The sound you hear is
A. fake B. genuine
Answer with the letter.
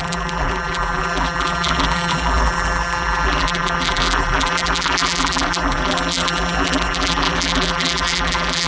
A